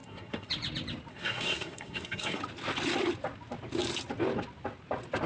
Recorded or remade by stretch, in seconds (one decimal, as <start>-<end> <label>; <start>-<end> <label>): 0.0-0.5 remade; 0.5-1.1 recorded; 1.1-2.4 remade; 2.4-5.3 recorded